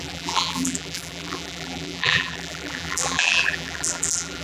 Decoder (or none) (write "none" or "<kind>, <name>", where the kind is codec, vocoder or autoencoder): vocoder, BigVGAN v2